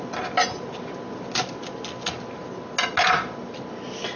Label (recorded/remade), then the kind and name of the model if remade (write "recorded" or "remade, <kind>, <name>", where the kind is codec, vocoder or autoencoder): recorded